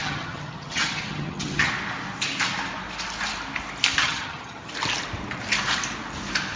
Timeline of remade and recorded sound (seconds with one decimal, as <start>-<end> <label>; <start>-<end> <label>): 0.0-1.7 remade; 1.7-4.0 recorded; 4.0-4.7 remade; 4.7-6.6 recorded